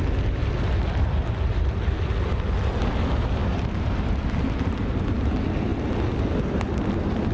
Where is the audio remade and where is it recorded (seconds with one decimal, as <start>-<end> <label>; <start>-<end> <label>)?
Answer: 0.0-7.3 recorded